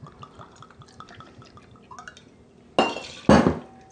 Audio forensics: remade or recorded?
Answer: recorded